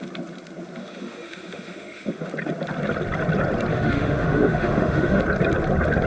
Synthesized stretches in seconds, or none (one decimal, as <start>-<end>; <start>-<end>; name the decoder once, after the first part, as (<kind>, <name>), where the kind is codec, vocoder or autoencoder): 0.8-2.3 (autoencoder, DAC-VAE); 3.7-5.2

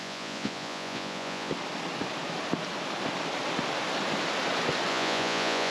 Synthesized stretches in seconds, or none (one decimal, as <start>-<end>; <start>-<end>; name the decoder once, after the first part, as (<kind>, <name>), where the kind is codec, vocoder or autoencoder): 0.0-1.5 (vocoder, Vocos); 4.9-5.7

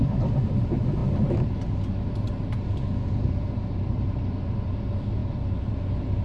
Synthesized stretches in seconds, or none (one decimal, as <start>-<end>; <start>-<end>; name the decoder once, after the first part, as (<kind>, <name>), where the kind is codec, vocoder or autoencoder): none

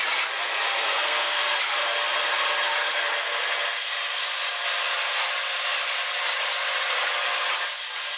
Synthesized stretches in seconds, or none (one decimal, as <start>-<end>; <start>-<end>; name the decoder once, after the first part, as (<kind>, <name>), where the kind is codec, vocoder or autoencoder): 0.9-1.4 (codec, SNAC)

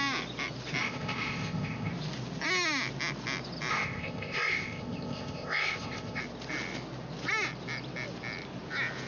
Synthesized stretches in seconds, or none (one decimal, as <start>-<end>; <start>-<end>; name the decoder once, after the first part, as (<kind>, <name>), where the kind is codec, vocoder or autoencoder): 0.8-1.9 (codec, ZipCodec); 3.7-6.2

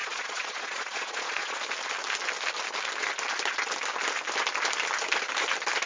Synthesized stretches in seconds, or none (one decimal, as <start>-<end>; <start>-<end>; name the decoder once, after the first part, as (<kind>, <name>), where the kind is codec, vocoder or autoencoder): 0.0-1.6 (vocoder, Vocos)

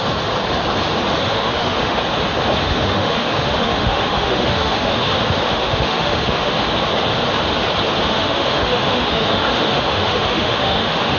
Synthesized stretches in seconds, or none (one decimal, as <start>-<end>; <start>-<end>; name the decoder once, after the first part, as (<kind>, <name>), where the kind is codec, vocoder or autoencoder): 1.2-2.0 (autoencoder, DAC-VAE); 2.6-6.5; 8.1-11.2